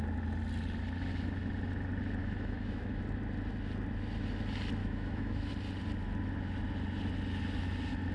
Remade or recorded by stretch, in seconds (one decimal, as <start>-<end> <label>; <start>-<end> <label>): 0.0-2.2 recorded; 2.2-3.0 remade; 3.0-4.8 recorded; 4.8-5.5 remade; 5.5-8.1 recorded